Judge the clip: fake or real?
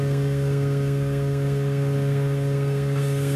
fake